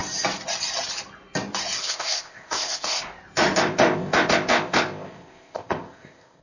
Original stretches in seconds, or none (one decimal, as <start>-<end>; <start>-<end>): 0.0-1.8; 3.0-3.6

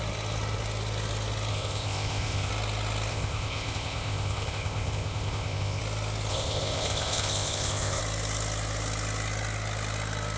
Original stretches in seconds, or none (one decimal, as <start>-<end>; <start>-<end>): 0.0-1.5; 2.5-3.1; 5.8-6.3; 8.0-10.4

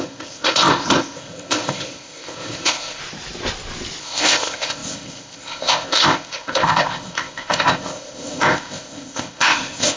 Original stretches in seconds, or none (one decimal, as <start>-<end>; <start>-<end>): 3.0-4.0